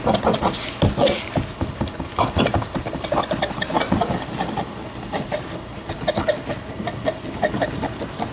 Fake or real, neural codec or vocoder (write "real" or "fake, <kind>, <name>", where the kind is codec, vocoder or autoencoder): real